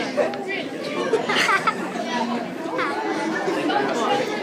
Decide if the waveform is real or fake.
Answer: real